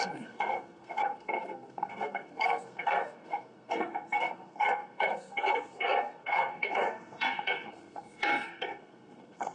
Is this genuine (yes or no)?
no